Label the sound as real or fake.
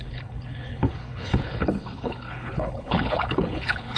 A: fake